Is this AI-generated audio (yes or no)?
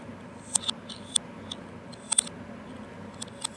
no